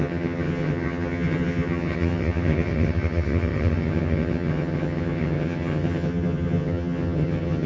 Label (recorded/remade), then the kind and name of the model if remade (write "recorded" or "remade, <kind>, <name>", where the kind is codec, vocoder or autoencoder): remade, vocoder, HiFi-GAN